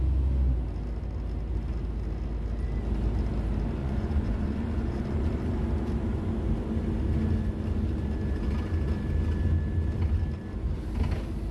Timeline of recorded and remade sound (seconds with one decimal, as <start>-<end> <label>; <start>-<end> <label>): 0.0-3.8 recorded; 3.8-5.3 remade; 5.3-11.5 recorded